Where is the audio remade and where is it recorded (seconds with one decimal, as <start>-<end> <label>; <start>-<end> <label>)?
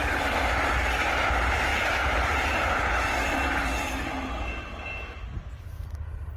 0.0-6.4 recorded